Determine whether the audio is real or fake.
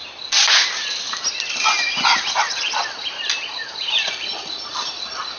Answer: real